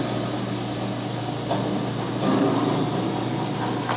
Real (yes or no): yes